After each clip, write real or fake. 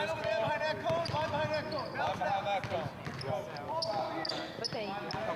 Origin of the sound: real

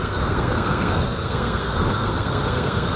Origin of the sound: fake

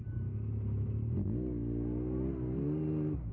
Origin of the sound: real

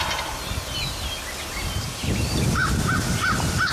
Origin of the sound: real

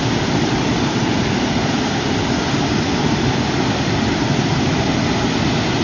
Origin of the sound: fake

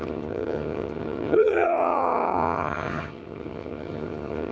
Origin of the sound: fake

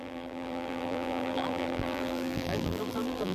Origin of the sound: fake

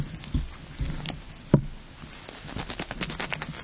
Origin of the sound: real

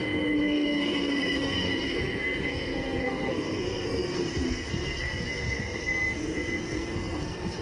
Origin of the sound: fake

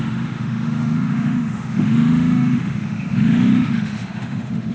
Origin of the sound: fake